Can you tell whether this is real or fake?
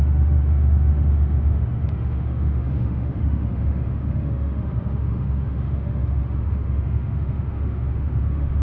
fake